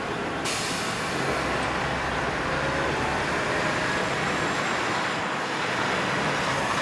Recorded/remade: recorded